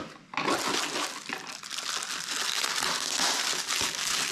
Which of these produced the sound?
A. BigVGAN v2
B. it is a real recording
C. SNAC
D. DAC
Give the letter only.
B